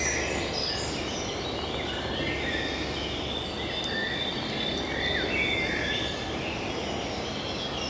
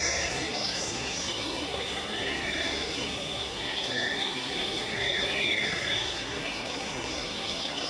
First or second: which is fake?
second